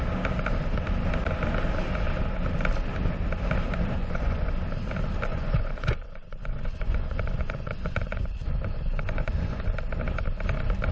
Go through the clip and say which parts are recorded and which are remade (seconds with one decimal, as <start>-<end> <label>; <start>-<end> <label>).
0.0-4.0 recorded; 4.0-4.5 remade; 4.5-5.3 recorded; 5.3-9.6 remade; 9.6-10.9 recorded